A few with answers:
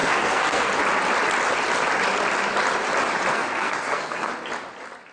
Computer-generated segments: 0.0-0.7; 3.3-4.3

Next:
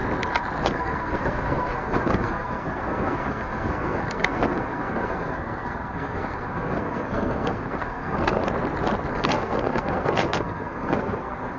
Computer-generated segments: 0.6-8.4; 9.1-11.6